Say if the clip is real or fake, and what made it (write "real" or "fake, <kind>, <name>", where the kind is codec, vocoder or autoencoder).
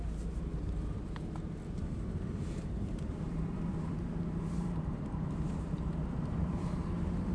fake, vocoder, BigVGAN v2